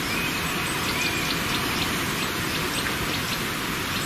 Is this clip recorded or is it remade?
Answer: recorded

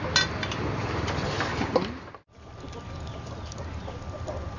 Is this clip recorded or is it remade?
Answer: recorded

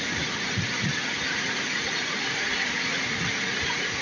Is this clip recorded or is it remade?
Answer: remade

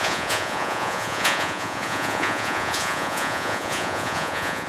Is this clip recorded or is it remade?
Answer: remade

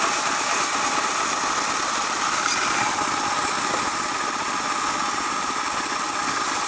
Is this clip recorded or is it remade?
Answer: recorded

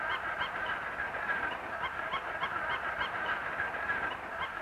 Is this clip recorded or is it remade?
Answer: remade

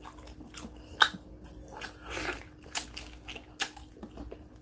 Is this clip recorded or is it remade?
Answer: recorded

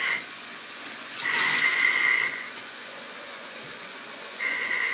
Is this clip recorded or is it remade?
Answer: remade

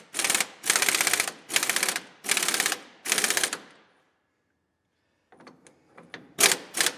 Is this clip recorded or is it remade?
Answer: recorded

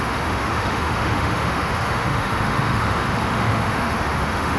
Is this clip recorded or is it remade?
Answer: remade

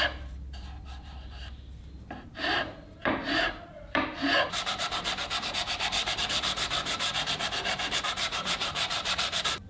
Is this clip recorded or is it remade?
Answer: remade